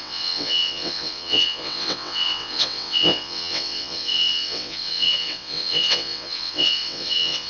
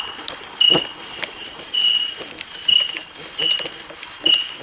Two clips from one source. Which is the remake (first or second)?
first